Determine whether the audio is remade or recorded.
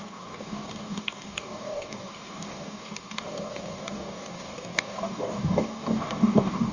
remade